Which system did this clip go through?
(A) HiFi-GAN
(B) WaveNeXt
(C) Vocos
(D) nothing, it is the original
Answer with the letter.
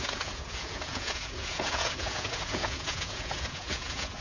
C